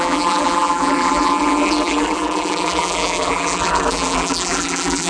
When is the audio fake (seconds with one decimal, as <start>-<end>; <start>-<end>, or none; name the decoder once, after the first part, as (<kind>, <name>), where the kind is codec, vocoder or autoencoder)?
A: 0.0-5.1 (vocoder, BigVGAN v2)